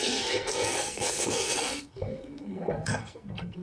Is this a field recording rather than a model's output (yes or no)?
no